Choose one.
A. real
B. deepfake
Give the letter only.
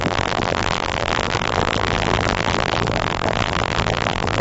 B